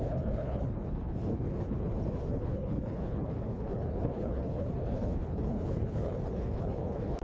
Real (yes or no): no